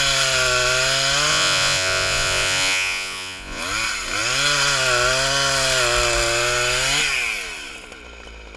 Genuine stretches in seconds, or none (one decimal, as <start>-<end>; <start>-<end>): 0.0-1.3; 3.6-8.6